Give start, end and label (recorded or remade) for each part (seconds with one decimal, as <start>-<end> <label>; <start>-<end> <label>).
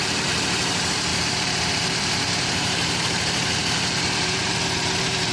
0.0-5.3 remade